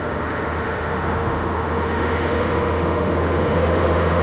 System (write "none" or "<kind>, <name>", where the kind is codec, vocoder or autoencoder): autoencoder, DAC-VAE